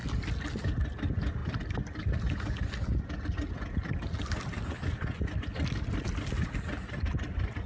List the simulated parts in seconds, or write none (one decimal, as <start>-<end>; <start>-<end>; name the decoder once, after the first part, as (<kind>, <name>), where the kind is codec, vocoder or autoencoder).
none